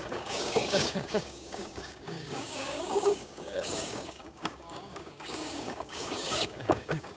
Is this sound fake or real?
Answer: fake